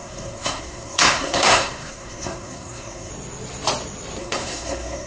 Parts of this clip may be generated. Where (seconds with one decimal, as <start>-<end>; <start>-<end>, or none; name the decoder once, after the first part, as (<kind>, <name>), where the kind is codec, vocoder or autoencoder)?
0.0-3.1 (codec, SNAC); 4.2-5.1